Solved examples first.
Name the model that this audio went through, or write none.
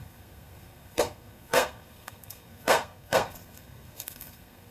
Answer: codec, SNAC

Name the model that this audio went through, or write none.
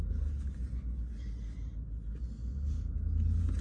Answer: none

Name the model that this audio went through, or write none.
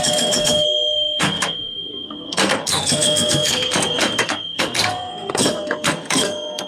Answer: codec, SNAC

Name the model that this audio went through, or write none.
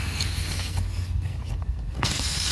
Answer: codec, SNAC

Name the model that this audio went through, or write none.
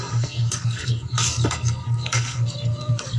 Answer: codec, SNAC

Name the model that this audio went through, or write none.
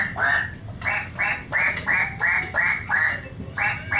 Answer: none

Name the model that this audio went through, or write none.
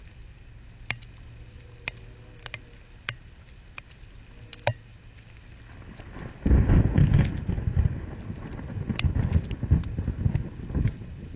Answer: none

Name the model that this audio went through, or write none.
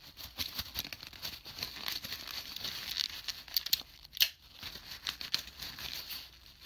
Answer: none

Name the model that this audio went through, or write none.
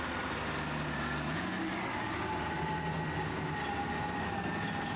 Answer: none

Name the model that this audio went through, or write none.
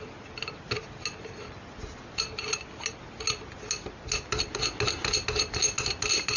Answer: none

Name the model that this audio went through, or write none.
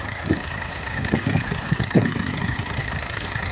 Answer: codec, SNAC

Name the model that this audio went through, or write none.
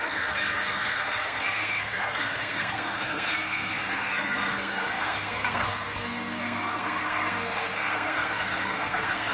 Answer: codec, SNAC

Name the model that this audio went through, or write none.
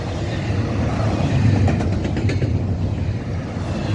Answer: none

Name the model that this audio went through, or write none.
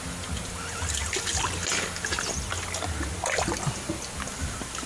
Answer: none